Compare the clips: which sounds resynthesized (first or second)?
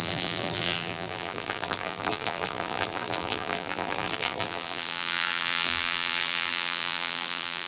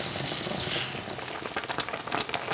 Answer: first